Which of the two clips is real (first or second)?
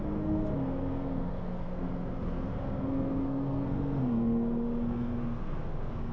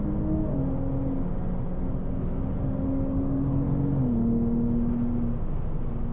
second